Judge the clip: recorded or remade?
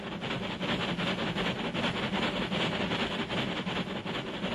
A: recorded